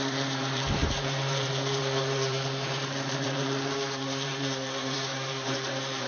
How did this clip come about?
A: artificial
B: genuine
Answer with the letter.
A